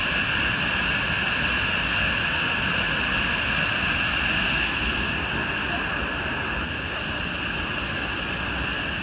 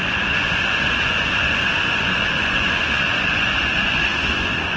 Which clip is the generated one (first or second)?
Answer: second